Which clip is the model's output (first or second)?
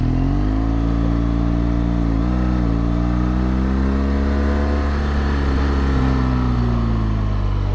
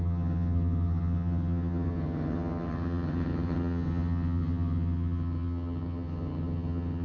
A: second